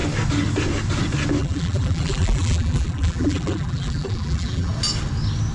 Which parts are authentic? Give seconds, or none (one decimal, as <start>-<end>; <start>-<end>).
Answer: 0.0-1.4; 4.7-5.5